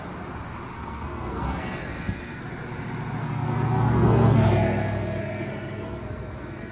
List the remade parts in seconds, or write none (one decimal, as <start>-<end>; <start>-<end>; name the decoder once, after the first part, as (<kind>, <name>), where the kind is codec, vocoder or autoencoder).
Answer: 0.7-2.4 (codec, SNAC); 3.2-6.7